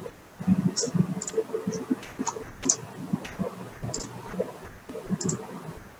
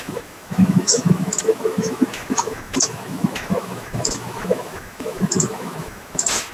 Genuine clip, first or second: first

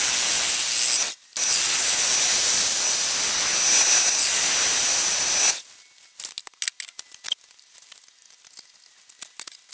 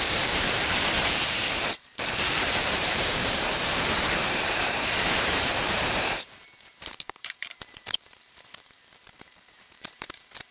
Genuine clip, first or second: first